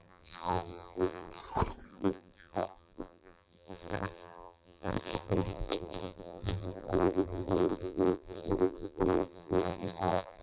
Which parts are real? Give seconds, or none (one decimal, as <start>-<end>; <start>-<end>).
1.4-1.9